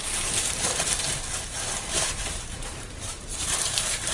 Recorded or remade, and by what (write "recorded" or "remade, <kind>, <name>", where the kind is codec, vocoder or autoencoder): remade, vocoder, BigVGAN v2